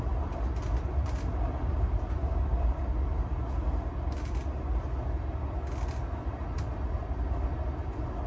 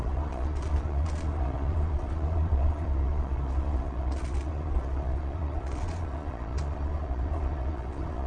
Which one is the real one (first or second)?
first